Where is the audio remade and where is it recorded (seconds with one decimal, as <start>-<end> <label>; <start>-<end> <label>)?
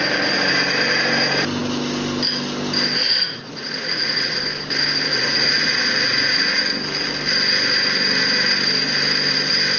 0.0-3.0 recorded; 3.0-4.4 remade; 4.4-5.1 recorded; 5.1-6.6 remade; 6.6-9.8 recorded